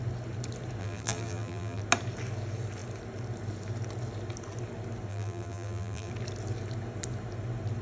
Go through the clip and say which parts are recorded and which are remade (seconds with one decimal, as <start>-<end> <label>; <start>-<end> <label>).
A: 0.0-0.8 recorded; 0.8-1.8 remade; 1.8-5.1 recorded; 5.1-6.1 remade; 6.1-7.8 recorded